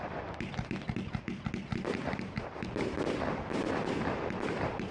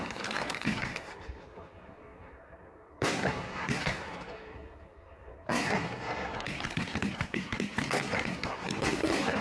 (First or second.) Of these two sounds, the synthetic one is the second